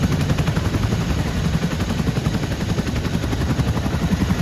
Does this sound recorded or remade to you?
remade